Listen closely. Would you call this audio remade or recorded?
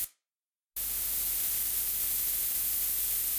recorded